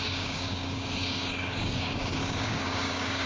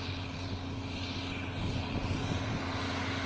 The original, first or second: second